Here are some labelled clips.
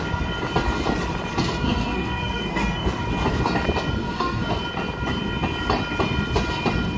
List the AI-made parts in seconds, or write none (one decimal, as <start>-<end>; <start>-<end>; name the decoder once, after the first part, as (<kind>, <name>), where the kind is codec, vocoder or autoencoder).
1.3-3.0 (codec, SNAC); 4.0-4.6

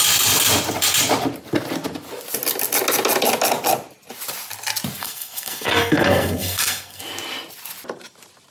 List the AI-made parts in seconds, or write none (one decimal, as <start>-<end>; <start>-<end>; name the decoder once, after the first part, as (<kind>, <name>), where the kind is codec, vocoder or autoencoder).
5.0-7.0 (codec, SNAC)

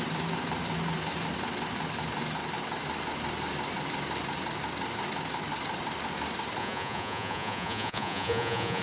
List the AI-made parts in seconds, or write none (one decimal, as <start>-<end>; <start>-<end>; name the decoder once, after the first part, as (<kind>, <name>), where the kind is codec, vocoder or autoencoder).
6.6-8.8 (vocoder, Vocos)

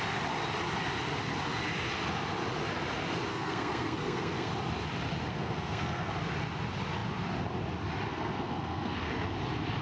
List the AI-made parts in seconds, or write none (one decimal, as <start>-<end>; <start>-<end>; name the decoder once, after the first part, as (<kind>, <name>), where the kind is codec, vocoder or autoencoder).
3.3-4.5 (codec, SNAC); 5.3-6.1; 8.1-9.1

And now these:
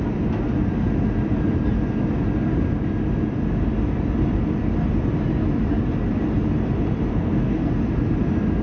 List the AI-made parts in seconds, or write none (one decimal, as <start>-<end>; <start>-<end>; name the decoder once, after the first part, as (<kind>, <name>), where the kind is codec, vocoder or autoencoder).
7.1-7.7 (codec, SNAC)